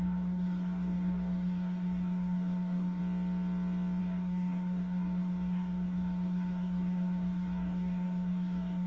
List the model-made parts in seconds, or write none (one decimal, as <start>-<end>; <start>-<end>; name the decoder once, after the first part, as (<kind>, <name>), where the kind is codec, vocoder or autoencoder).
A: 0.0-3.0 (codec, DAC); 4.0-8.9